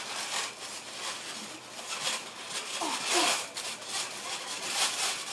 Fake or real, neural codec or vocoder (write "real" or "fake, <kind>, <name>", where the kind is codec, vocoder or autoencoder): real